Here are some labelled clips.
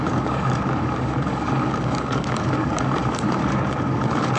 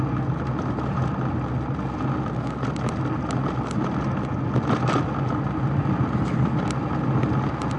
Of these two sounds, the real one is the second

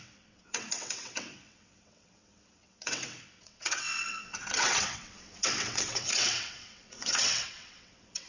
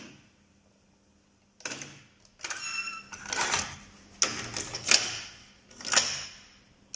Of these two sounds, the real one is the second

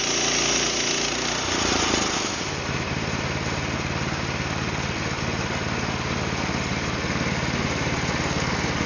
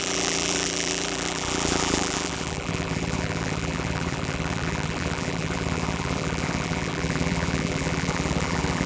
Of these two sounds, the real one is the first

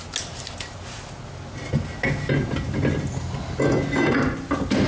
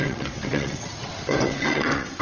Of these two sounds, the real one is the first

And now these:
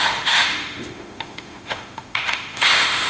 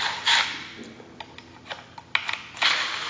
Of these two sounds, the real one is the second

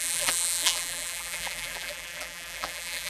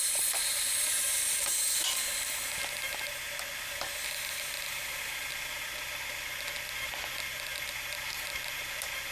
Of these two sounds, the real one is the second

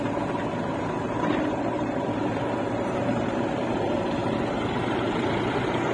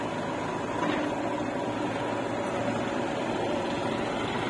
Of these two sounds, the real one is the second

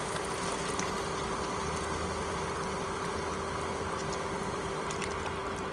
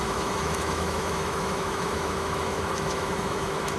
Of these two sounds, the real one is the first